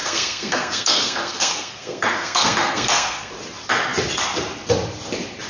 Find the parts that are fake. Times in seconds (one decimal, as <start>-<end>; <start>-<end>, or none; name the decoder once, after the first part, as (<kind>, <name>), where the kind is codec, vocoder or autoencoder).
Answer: 0.0-3.3 (codec, SNAC)